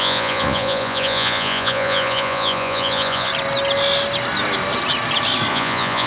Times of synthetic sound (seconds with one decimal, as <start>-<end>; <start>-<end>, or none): 0.0-3.3; 5.5-6.1